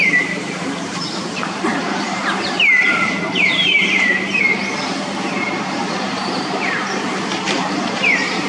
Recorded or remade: remade